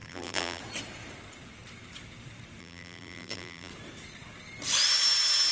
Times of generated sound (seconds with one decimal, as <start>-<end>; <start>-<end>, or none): 0.0-0.6; 2.6-3.7